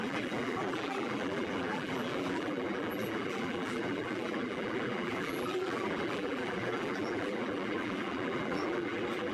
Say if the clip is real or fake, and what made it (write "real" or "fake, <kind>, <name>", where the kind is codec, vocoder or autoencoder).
fake, vocoder, BigVGAN v2